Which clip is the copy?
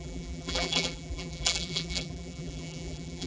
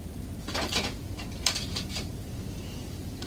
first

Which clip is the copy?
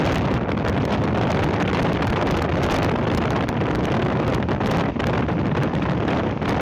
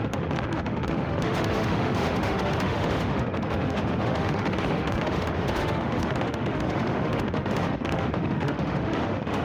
second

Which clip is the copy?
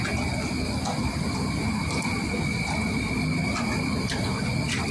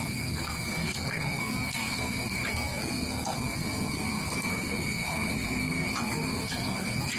second